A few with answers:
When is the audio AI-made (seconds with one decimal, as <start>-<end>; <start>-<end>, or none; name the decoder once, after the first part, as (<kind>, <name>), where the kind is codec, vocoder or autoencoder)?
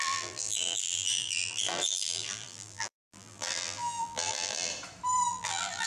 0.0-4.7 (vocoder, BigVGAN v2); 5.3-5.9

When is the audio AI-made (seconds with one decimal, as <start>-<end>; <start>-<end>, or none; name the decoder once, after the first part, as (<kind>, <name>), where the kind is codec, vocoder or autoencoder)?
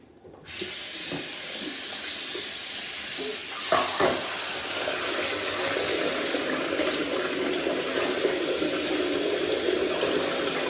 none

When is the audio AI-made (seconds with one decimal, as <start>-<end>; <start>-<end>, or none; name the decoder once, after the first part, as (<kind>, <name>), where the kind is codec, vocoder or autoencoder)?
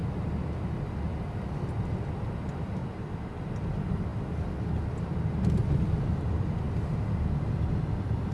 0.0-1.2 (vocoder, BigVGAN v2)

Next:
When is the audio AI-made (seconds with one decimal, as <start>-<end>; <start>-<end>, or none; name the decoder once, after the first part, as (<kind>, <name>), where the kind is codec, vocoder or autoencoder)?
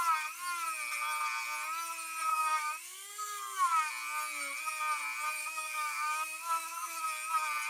2.3-3.9 (codec, DAC); 5.4-7.0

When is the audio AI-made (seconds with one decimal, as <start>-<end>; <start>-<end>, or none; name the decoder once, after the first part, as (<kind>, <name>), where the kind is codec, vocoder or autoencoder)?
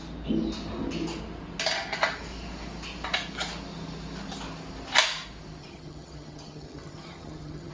5.6-7.7 (vocoder, HiFi-GAN)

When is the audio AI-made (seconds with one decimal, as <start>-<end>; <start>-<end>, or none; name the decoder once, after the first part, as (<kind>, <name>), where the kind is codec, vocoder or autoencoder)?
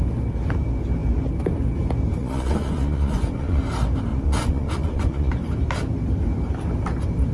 2.2-3.6 (vocoder, Vocos); 4.1-5.3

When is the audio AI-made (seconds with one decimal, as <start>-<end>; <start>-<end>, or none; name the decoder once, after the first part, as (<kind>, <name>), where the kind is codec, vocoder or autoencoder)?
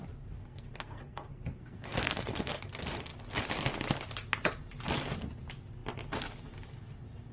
0.4-2.6 (codec, SNAC)